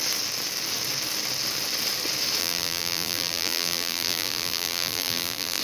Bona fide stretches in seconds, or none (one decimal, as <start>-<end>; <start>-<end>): 0.0-2.4